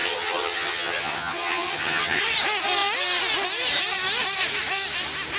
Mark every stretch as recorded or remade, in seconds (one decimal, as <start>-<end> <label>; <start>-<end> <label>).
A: 0.0-2.2 remade; 2.2-5.4 recorded